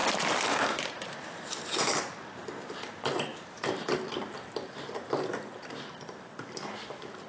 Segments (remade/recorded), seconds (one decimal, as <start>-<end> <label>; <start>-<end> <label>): 0.0-0.5 recorded; 0.5-7.3 remade